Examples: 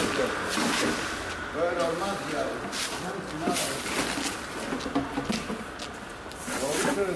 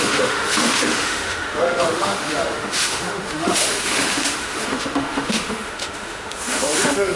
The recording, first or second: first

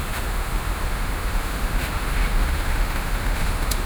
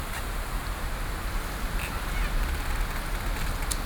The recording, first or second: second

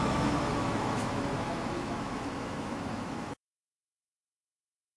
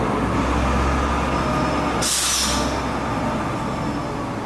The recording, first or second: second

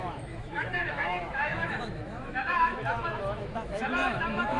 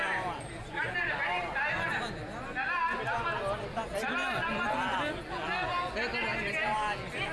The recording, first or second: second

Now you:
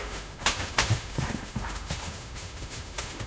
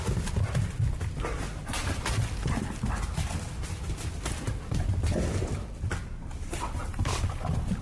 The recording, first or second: second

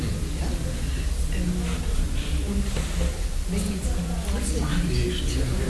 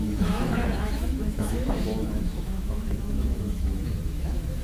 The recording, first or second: first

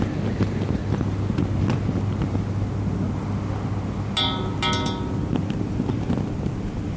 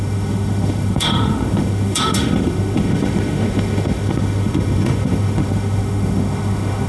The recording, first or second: first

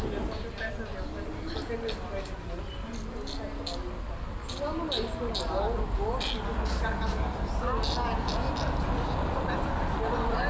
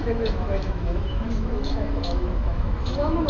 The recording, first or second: first